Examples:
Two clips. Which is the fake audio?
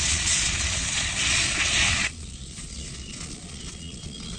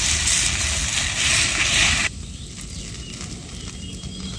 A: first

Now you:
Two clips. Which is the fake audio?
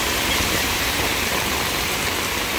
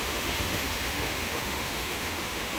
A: second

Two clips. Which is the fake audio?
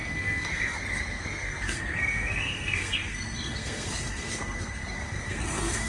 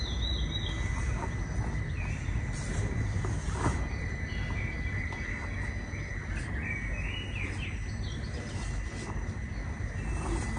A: first